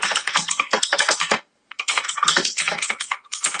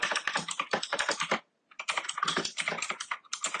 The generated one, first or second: first